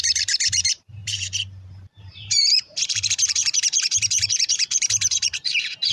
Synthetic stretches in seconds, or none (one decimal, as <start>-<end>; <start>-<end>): 0.0-5.9